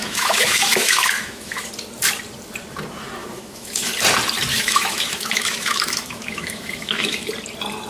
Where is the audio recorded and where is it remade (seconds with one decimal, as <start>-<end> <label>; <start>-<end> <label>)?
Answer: 0.0-1.7 remade; 1.7-3.2 recorded; 3.2-3.9 remade; 3.9-4.5 recorded; 4.5-7.3 remade; 7.3-7.9 recorded